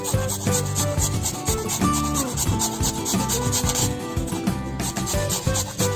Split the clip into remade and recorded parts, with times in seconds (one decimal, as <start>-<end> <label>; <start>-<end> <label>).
0.0-3.8 recorded; 3.8-4.3 remade; 4.3-6.0 recorded

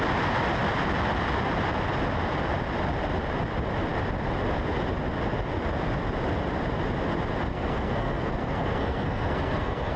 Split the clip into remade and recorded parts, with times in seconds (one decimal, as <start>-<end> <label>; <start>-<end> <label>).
0.0-7.5 recorded; 7.5-10.0 remade

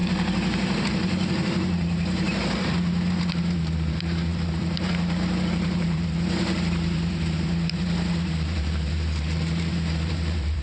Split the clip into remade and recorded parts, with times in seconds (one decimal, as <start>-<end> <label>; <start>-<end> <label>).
0.0-10.6 remade